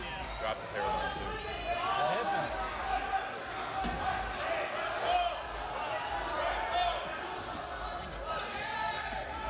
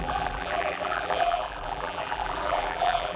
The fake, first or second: second